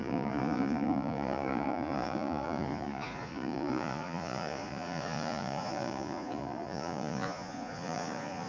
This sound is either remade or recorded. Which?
remade